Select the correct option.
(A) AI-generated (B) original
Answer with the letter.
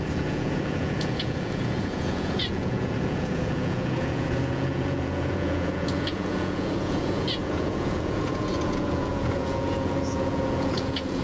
A